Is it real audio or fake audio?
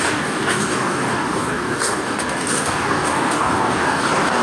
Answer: fake